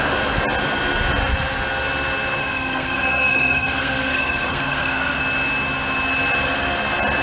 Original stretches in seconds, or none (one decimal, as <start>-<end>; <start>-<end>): 0.0-2.4; 5.2-7.2